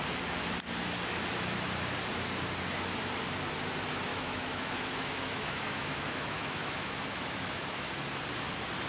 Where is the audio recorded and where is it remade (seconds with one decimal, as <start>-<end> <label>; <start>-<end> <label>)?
0.0-4.1 recorded; 4.1-7.9 remade; 7.9-8.9 recorded